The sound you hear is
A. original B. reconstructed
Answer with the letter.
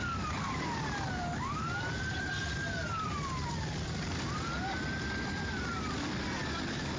B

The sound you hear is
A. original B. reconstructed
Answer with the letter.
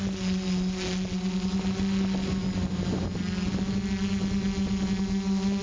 A